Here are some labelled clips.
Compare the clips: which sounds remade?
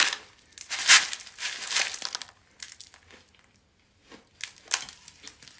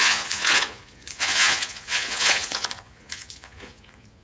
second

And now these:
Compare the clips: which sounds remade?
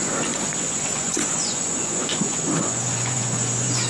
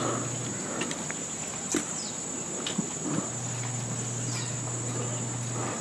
first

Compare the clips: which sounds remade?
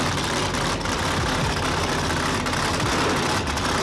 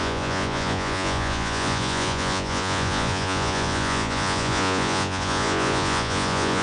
second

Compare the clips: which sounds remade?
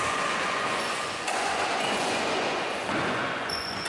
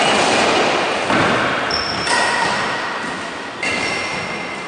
first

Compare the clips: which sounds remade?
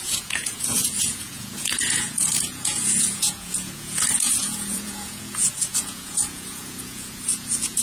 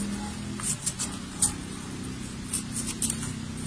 first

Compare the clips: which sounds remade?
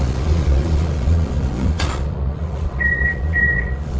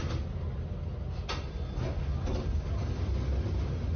first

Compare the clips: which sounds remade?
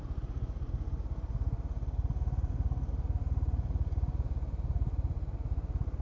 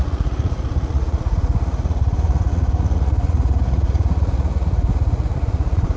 second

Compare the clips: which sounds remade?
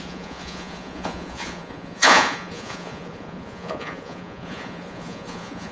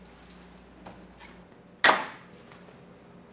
first